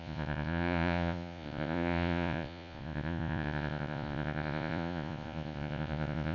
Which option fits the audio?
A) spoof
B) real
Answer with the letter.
A